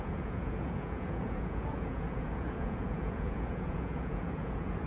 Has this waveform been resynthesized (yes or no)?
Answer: yes